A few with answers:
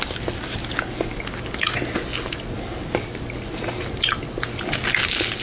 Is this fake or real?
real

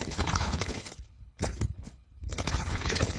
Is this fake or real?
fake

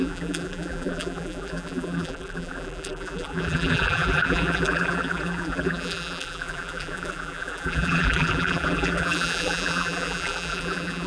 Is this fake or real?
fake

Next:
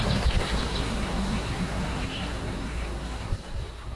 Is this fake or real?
fake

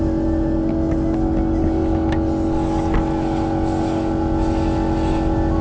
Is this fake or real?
real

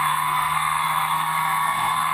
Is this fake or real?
fake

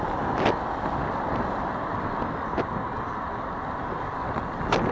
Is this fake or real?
real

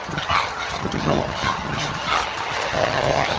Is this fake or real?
fake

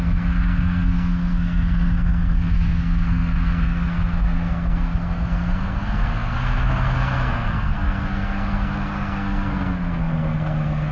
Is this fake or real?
fake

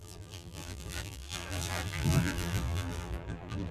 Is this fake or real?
fake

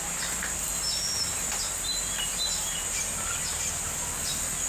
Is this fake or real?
real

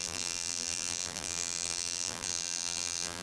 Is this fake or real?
fake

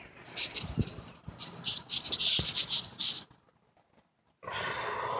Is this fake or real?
real